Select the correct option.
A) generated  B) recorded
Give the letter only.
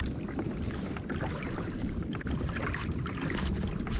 B